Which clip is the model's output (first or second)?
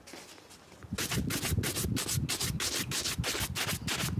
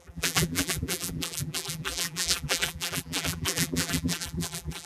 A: second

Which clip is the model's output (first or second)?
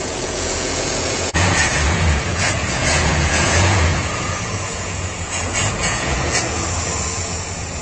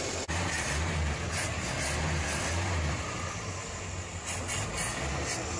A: first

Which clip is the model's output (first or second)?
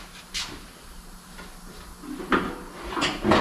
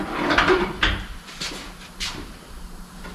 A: second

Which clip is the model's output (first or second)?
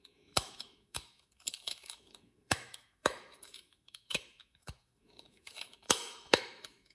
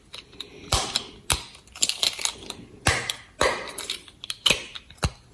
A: first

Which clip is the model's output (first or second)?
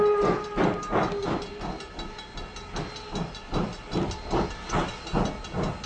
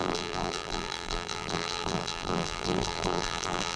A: second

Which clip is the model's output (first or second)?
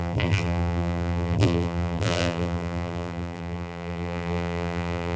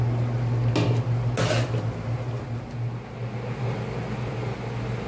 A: first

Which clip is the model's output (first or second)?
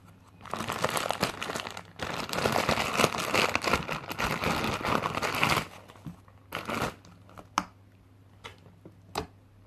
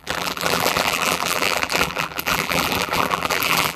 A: second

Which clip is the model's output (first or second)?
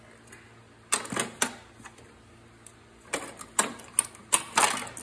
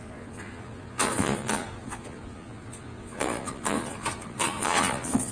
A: second